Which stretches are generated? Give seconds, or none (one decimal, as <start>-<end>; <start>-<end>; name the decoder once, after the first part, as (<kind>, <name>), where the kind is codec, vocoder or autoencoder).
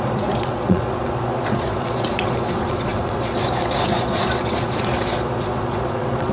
0.0-6.3 (vocoder, Vocos)